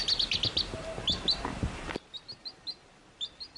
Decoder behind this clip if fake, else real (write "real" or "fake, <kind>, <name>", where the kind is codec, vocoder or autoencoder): real